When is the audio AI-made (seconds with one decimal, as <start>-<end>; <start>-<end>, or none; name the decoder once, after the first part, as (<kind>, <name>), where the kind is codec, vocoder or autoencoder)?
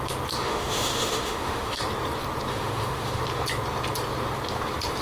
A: 0.4-1.8 (autoencoder, DAC-VAE); 2.5-3.2